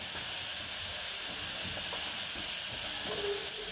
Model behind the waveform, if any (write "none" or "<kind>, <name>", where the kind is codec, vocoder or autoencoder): none